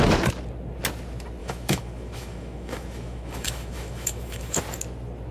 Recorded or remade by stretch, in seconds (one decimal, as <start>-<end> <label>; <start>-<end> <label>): 0.0-1.4 recorded; 1.4-4.6 remade; 4.6-5.3 recorded